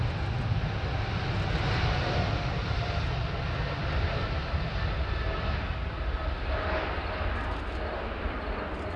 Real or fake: real